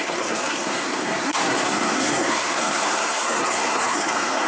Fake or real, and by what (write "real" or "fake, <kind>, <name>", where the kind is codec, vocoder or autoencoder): fake, codec, SNAC